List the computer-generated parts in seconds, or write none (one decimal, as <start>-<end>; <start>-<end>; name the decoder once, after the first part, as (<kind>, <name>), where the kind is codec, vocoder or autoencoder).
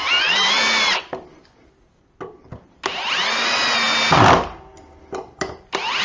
0.0-0.6 (vocoder, BigVGAN v2)